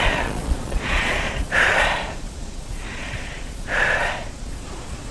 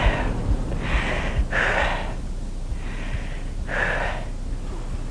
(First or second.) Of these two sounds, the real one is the second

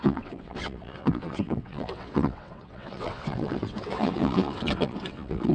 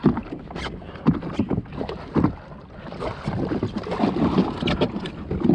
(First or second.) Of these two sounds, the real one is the second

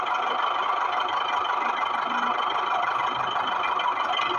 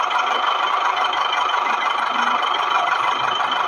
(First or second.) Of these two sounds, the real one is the first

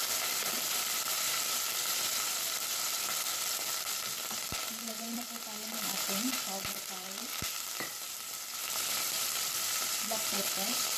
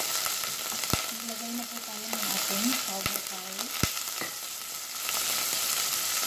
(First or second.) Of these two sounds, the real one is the second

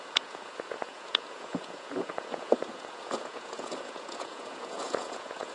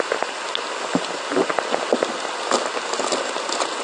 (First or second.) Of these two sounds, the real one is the second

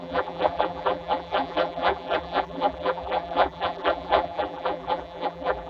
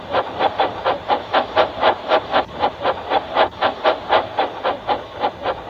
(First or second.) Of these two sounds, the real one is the second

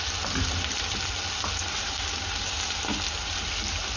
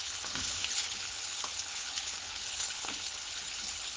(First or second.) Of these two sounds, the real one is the first